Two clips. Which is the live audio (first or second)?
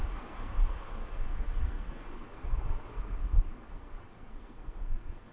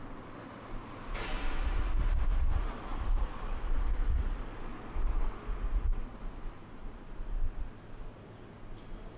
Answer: second